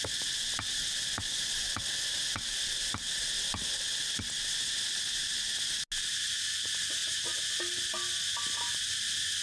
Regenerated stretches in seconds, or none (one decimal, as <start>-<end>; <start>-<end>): none